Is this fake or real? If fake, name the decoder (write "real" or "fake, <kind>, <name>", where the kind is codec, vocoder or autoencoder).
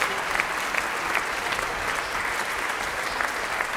real